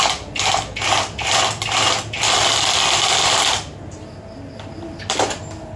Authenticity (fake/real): real